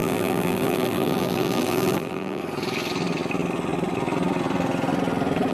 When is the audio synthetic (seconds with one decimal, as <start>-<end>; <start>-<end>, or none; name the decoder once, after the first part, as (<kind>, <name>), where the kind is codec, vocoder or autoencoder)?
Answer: 0.0-2.4 (vocoder, BigVGAN v2)

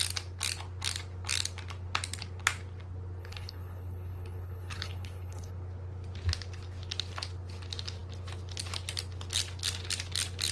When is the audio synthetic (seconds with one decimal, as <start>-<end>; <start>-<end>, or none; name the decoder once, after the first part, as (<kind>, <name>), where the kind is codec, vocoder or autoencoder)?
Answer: 3.2-5.5 (codec, HILCodec)

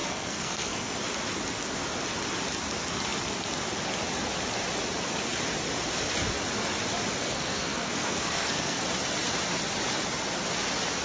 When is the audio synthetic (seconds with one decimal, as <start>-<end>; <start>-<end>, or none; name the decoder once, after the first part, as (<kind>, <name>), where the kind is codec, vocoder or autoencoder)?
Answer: 0.0-1.0 (codec, SNAC); 7.2-8.8

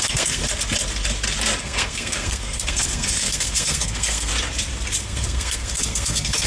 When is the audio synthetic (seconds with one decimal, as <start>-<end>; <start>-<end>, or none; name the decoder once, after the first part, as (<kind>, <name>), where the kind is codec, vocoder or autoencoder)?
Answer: 0.0-0.4 (codec, SNAC); 1.6-4.3; 5.0-6.5

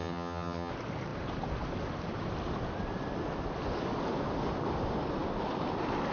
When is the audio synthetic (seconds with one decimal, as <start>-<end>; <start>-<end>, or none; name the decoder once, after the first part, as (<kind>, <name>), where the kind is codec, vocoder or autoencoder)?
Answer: 0.0-0.7 (vocoder, HiFi-GAN)